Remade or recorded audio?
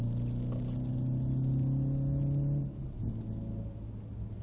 recorded